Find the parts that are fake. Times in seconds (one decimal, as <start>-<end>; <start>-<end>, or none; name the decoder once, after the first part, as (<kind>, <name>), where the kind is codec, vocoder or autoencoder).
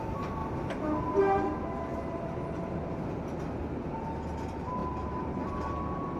1.9-2.8 (vocoder, BigVGAN v2); 4.8-5.5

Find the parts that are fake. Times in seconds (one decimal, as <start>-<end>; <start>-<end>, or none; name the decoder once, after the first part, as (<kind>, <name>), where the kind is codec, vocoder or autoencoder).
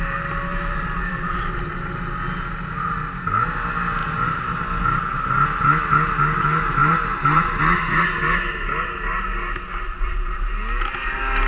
0.5-1.9 (vocoder, BigVGAN v2); 6.8-7.6; 9.7-10.4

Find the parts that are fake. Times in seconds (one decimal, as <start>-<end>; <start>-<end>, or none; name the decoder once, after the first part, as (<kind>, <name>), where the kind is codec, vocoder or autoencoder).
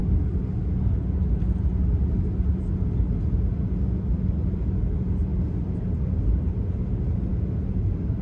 none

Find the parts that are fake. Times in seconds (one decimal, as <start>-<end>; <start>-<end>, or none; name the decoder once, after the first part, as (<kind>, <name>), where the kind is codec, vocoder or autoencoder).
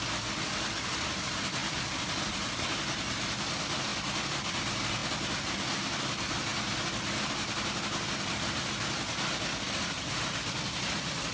3.9-4.6 (vocoder, BigVGAN v2)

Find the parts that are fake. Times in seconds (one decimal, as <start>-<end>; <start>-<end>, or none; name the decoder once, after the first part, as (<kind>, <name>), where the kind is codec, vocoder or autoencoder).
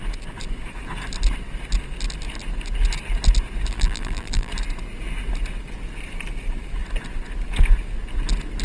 3.7-4.5 (vocoder, BigVGAN v2)